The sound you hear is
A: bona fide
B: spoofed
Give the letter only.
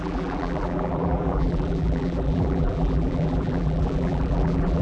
B